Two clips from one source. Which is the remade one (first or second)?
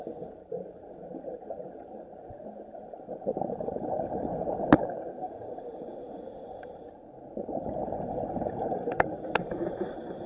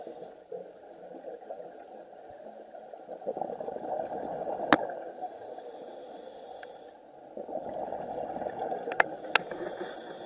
first